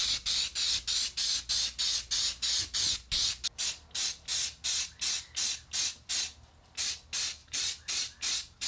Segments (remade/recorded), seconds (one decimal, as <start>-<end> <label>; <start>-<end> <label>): 0.0-7.4 recorded; 7.4-8.7 remade